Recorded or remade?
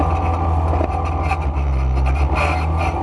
recorded